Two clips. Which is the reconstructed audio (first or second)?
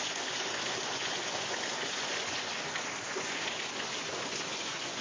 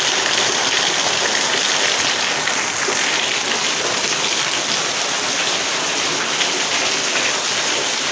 first